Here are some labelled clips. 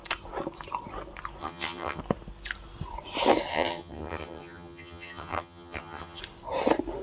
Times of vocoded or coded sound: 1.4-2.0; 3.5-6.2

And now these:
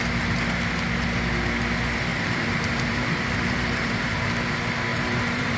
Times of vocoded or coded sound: 2.1-4.1; 4.9-5.6